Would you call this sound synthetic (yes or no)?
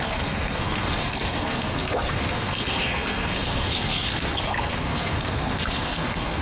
yes